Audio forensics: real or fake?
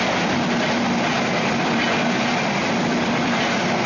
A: real